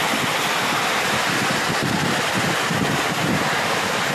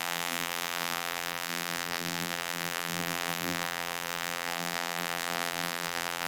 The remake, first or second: second